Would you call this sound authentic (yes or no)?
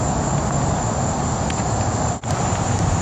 yes